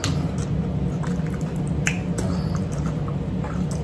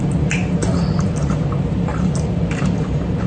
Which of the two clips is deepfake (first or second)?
second